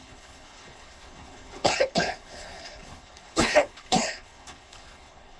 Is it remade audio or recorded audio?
remade